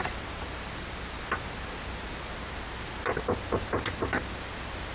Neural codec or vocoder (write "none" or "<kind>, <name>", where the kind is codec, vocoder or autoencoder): none